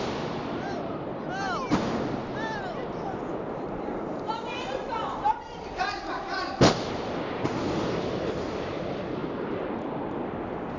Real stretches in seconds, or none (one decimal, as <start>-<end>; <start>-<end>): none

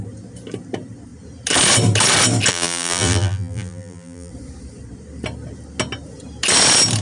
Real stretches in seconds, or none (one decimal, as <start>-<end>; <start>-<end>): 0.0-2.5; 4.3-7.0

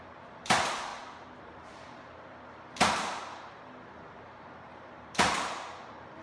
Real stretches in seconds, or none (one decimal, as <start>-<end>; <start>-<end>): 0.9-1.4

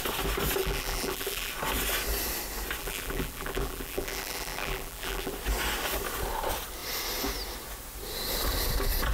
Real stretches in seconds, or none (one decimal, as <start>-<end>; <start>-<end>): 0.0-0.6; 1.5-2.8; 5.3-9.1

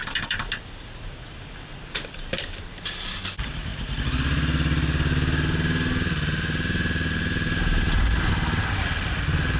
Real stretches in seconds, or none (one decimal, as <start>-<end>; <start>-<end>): 3.2-9.6

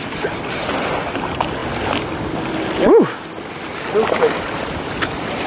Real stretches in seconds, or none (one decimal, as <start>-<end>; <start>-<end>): 0.0-5.5

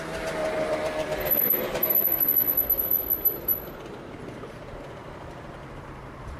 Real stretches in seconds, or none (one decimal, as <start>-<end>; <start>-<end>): 0.0-0.4; 4.2-5.0; 5.6-6.4